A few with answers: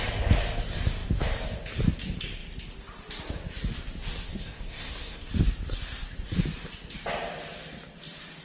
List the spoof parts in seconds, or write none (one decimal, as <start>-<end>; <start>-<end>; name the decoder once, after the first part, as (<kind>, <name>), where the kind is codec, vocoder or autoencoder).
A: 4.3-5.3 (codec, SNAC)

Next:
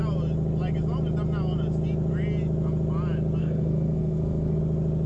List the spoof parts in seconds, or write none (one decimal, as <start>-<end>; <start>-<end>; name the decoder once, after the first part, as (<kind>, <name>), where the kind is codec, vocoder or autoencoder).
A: 3.4-4.6 (codec, SNAC)

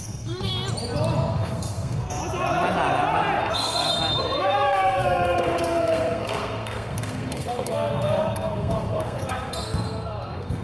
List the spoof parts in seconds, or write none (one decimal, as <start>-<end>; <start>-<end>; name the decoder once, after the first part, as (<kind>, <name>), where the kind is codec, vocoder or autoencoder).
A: 0.0-0.5 (codec, SNAC); 1.3-2.2; 3.4-3.9; 4.4-10.6

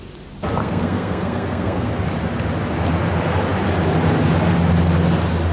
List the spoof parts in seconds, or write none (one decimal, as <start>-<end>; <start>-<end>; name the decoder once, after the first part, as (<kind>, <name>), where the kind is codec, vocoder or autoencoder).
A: 0.6-1.9 (codec, SNAC)

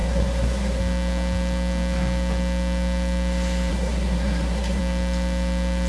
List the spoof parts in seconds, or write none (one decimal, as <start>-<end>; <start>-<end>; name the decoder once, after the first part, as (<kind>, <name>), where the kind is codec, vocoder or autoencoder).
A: 0.0-0.8 (codec, SNAC); 3.7-4.8

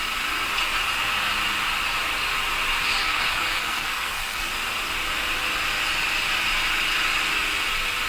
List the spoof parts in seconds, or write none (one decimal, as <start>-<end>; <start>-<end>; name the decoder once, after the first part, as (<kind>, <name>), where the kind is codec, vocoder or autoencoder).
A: 3.0-4.5 (codec, SNAC)

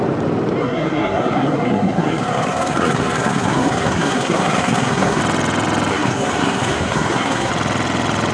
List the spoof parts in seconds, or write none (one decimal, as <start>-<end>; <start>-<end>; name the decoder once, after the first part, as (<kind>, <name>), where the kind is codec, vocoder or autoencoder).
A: 0.6-5.2 (codec, SNAC); 5.9-7.5